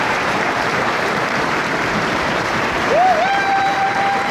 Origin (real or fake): fake